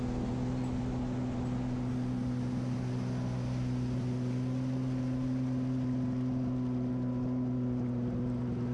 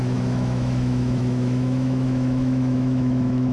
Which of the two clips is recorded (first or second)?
first